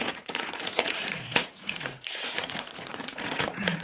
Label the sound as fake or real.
fake